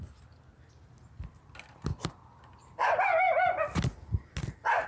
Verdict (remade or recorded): recorded